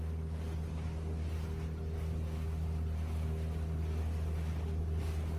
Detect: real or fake real